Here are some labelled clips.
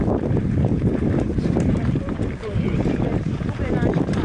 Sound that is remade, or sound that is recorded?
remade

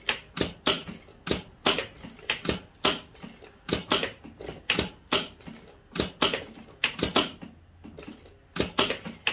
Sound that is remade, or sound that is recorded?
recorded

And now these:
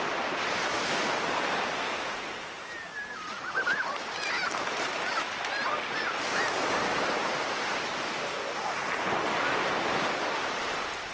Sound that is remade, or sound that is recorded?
recorded